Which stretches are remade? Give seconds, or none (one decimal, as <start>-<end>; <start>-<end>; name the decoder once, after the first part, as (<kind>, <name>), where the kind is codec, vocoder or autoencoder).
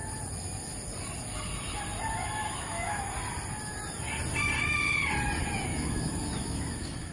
2.4-3.1 (autoencoder, DAC-VAE); 5.7-7.1